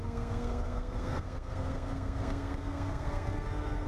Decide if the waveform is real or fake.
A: fake